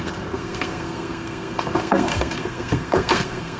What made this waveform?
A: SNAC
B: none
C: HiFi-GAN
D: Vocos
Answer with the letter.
A